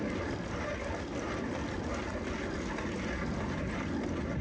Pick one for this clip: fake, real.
real